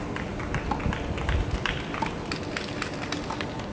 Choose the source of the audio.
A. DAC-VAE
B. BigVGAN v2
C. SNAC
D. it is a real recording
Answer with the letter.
D